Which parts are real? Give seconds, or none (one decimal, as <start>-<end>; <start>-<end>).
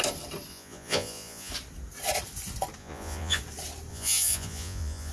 0.0-0.5; 1.5-2.8; 3.4-3.9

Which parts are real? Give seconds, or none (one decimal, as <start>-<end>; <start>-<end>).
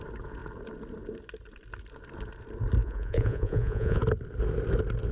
0.0-2.8; 4.0-5.1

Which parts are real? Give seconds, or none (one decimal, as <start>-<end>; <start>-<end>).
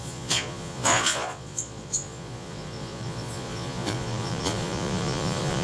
none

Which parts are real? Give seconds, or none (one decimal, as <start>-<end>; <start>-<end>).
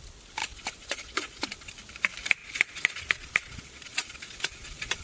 0.0-0.4; 1.7-2.4